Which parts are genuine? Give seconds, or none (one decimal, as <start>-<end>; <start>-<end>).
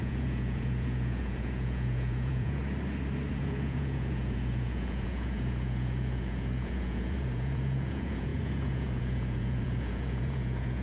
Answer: 2.6-3.3